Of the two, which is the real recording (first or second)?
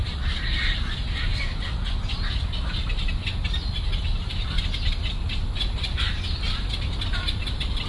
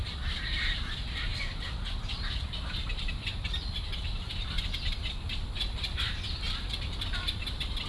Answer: first